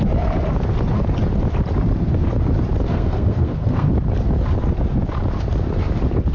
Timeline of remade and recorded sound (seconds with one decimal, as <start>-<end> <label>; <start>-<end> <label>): 0.0-2.9 recorded; 2.9-3.9 remade; 3.9-6.3 recorded